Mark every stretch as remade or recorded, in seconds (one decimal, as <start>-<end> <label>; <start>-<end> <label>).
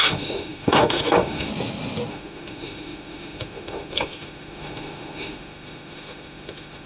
0.0-1.5 remade; 1.5-2.1 recorded; 2.1-6.9 remade